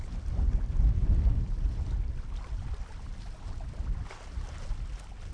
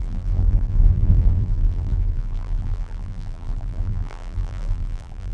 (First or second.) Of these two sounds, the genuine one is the first